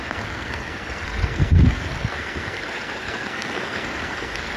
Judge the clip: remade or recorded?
remade